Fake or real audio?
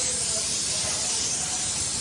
fake